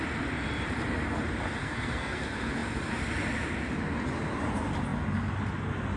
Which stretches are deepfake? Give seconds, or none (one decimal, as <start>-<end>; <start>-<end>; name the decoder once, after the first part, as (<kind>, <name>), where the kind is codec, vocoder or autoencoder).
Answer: 1.6-2.2 (codec, SNAC)